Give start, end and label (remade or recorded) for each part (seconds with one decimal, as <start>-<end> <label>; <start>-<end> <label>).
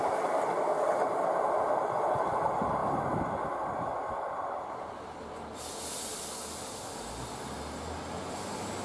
0.0-8.8 recorded